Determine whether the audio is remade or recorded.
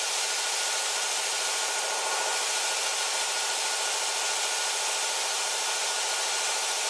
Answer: recorded